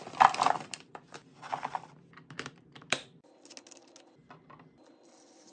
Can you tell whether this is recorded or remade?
recorded